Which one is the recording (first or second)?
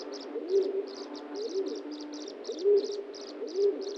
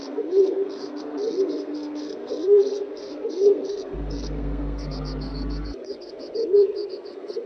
first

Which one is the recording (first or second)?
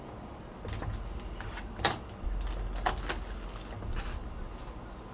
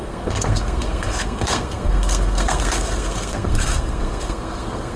first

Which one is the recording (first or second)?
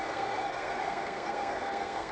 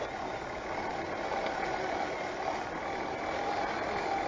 second